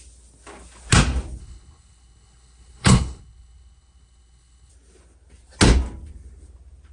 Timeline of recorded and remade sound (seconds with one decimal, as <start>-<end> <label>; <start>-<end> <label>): 0.0-1.4 recorded; 1.4-4.7 remade; 4.7-6.9 recorded